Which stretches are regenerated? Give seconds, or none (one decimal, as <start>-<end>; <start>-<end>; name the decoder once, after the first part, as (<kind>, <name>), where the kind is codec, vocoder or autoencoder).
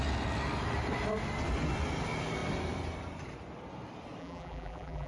4.2-5.1 (vocoder, BigVGAN v2)